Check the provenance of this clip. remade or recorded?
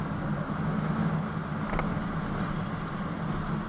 recorded